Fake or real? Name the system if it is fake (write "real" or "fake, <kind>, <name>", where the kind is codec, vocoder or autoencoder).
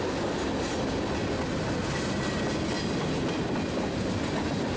real